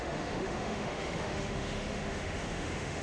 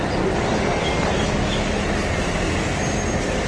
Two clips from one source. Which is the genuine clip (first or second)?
second